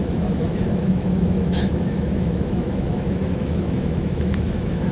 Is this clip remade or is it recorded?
remade